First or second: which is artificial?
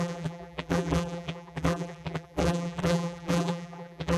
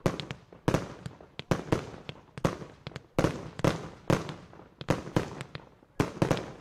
first